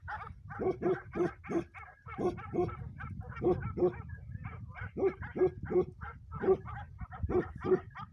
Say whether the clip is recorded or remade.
recorded